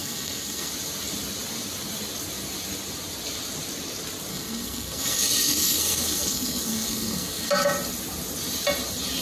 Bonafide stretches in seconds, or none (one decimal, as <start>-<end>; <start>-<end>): 0.7-4.3; 7.5-9.2